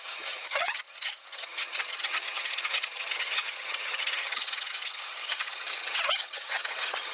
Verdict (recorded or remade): remade